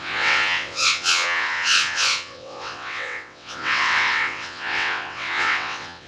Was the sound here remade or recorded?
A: remade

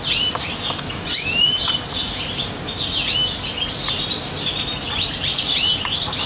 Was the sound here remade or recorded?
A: recorded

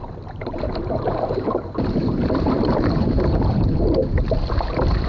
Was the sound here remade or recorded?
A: remade